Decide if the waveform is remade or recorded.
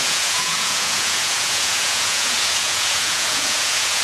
remade